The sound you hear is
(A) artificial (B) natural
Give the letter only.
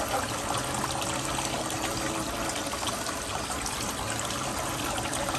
B